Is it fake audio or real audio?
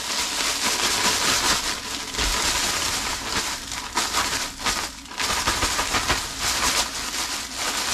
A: real